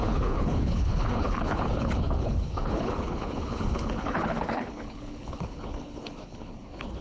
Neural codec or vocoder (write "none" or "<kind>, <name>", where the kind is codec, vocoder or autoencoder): codec, HILCodec